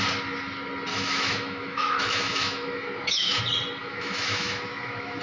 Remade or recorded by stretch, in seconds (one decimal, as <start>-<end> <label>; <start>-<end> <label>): 0.0-0.9 recorded; 0.9-3.4 remade; 3.4-3.8 recorded; 3.8-5.2 remade